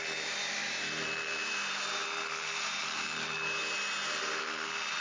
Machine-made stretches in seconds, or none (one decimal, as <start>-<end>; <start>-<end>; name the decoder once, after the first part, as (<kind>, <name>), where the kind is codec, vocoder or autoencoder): none